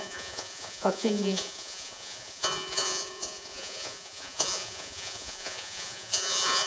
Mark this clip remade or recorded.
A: remade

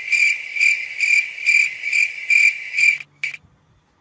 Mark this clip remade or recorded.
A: recorded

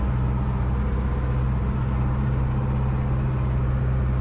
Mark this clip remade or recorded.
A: recorded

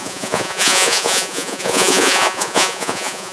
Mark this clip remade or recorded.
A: remade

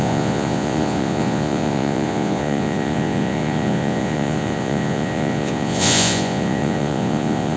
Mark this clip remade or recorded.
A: remade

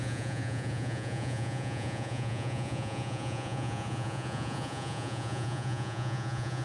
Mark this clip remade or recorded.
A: remade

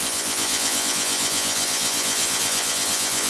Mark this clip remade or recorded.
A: remade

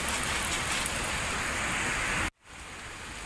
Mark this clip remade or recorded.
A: recorded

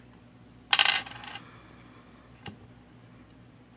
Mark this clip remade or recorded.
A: recorded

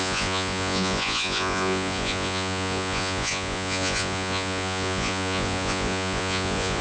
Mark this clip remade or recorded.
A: remade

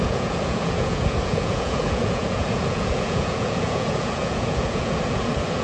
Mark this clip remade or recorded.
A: remade